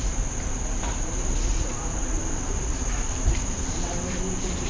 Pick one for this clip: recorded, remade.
remade